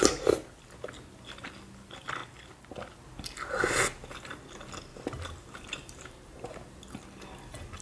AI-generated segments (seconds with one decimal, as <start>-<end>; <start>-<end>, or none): 4.9-6.8